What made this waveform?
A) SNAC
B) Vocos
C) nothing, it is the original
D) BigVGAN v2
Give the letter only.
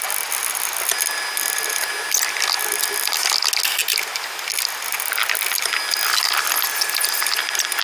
C